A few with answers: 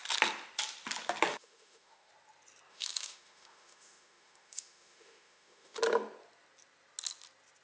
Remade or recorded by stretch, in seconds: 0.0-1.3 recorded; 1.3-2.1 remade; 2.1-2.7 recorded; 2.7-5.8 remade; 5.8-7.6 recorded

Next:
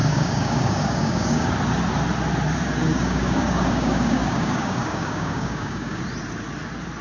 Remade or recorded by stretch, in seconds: 0.0-1.5 remade; 1.5-2.9 recorded; 2.9-6.0 remade; 6.0-7.0 recorded

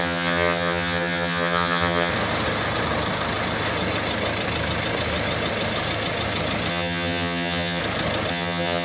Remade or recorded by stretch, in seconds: 0.0-2.1 remade; 2.1-6.7 recorded; 6.7-7.8 remade; 7.8-8.3 recorded; 8.3-8.8 remade

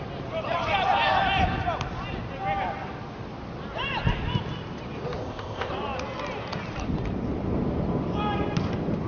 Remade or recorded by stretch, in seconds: 0.0-5.2 recorded; 5.2-5.7 remade; 5.7-9.1 recorded

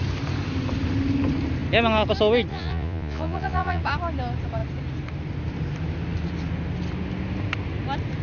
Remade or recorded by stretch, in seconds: 0.0-2.5 recorded; 2.5-3.8 remade; 3.8-8.2 recorded

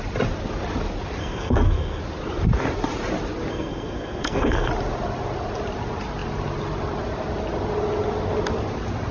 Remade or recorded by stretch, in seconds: 0.0-1.2 recorded; 1.2-2.0 remade; 2.0-3.5 recorded; 3.5-4.7 remade; 4.7-9.1 recorded

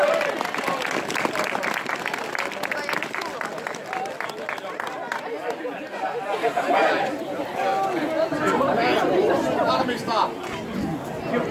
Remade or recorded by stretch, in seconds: 0.0-11.5 recorded